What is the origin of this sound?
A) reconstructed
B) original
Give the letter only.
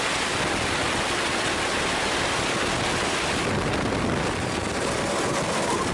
B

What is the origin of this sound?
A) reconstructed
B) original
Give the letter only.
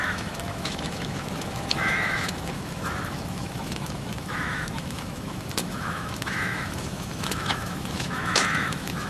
A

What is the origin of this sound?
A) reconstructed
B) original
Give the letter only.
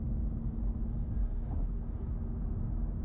B